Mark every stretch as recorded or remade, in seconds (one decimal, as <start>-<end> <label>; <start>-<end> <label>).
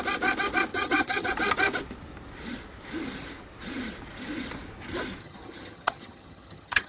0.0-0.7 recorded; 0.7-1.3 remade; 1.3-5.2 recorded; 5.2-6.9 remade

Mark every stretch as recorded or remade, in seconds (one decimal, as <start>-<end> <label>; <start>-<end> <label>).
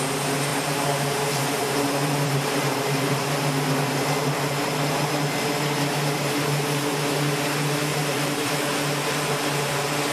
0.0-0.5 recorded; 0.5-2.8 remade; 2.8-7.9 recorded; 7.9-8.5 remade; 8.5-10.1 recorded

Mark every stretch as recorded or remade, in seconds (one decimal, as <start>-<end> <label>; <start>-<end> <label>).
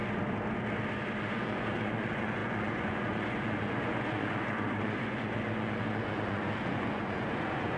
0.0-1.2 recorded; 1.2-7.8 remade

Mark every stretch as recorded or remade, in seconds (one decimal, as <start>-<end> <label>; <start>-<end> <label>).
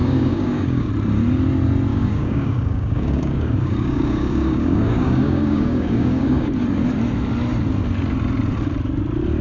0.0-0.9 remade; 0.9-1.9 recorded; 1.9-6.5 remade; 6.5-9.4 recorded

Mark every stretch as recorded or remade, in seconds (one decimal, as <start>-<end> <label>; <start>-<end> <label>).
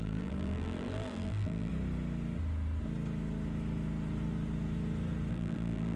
0.0-1.7 remade; 1.7-5.3 recorded; 5.3-6.0 remade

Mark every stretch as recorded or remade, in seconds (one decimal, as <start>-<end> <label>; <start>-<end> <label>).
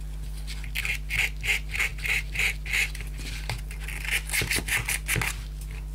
0.0-5.9 recorded